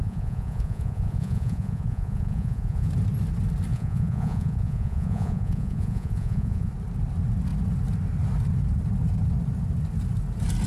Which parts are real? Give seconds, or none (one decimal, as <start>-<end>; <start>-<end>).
2.9-3.7; 6.7-10.7